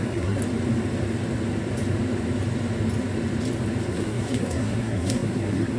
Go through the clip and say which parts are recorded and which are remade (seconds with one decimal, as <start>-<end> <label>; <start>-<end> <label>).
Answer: 0.0-0.4 remade; 0.4-3.9 recorded; 3.9-5.8 remade